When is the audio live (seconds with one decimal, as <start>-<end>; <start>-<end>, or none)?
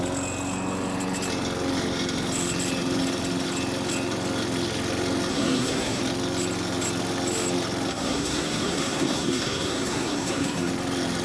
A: 0.0-5.3; 6.0-7.9; 10.7-11.2